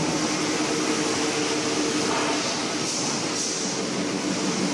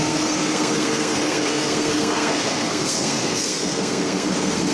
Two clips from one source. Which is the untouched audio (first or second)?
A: first